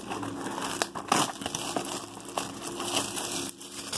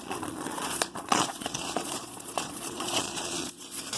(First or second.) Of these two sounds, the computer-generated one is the second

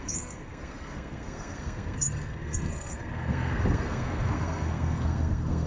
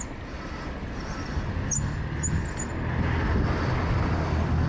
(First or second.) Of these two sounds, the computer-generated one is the first